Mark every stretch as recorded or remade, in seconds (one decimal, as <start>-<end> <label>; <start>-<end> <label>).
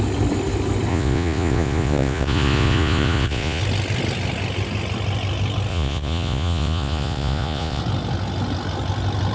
0.0-0.9 recorded; 0.9-3.6 remade; 3.6-5.7 recorded; 5.7-7.8 remade; 7.8-9.3 recorded